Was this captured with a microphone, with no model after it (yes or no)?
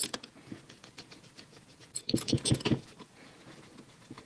no